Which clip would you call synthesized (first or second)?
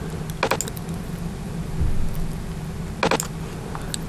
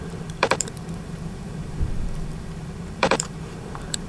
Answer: second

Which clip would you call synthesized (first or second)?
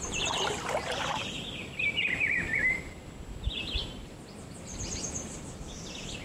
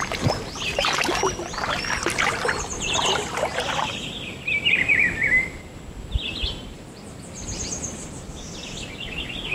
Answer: first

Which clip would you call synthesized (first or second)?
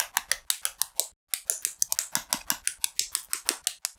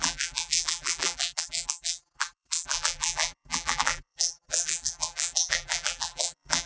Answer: second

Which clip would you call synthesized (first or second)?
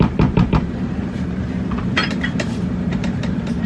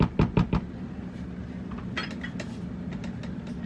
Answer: first